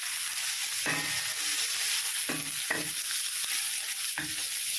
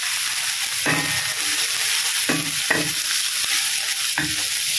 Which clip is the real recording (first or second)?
first